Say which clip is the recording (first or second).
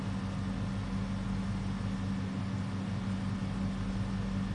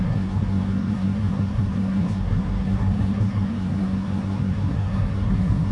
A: first